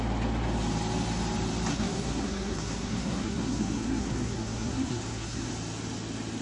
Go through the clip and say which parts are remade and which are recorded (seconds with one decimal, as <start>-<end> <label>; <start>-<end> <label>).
0.0-1.7 recorded; 1.7-5.5 remade; 5.5-6.4 recorded